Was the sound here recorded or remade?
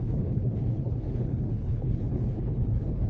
remade